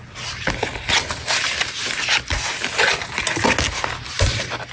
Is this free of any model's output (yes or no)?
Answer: yes